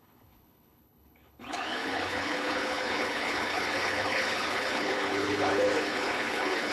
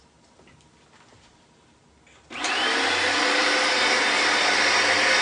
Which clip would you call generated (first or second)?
first